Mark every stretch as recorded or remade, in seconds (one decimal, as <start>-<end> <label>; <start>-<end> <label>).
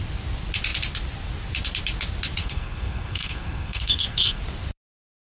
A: 0.0-2.4 recorded; 2.4-4.4 remade; 4.4-5.4 recorded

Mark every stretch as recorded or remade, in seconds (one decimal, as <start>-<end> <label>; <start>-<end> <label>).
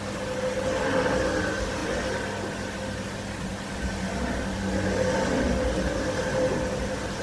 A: 0.0-7.2 recorded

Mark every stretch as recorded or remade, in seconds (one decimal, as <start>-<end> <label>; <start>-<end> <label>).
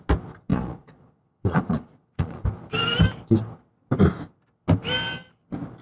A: 0.0-0.5 recorded; 0.5-2.4 remade; 2.4-5.8 recorded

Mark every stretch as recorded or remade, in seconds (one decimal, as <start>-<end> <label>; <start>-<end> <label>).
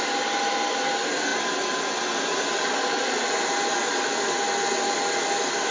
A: 0.0-5.7 recorded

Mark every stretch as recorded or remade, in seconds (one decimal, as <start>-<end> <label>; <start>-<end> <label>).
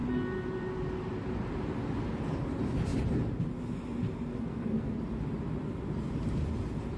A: 0.0-4.3 recorded; 4.3-5.0 remade; 5.0-7.0 recorded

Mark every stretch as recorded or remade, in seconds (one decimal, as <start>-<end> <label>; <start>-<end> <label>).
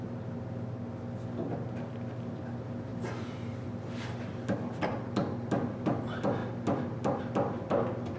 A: 0.0-2.9 recorded; 2.9-4.1 remade; 4.1-8.2 recorded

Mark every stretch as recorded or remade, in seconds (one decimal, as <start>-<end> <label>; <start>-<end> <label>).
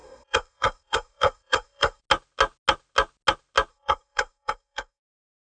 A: 0.0-2.0 remade; 2.0-3.7 recorded; 3.7-5.0 remade; 5.0-5.6 recorded